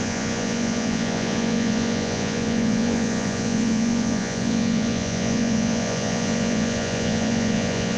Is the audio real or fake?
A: fake